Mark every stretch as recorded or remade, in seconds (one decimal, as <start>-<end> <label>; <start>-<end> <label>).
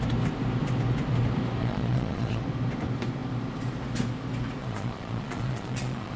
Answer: 0.0-1.6 recorded; 1.6-2.4 remade; 2.4-4.6 recorded; 4.6-6.2 remade